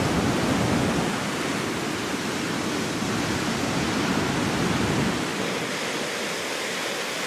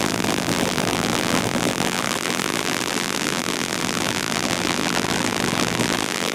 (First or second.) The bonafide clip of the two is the first